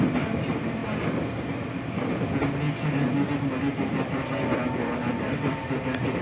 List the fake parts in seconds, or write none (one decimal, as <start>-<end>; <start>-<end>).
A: none